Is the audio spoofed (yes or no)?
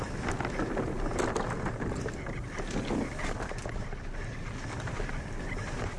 no